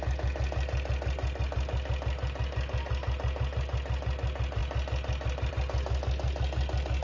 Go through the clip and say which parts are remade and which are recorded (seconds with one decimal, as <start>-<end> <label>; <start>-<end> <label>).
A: 0.0-7.0 recorded